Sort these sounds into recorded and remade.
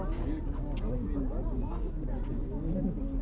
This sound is recorded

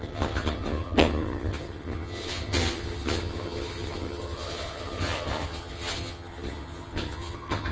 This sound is remade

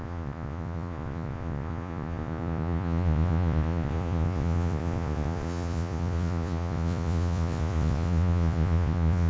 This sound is remade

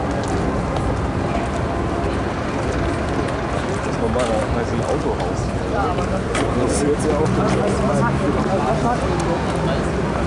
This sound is recorded